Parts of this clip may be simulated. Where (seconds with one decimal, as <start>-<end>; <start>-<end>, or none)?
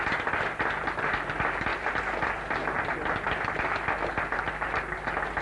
none